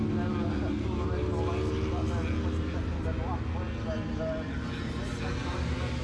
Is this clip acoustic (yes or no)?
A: yes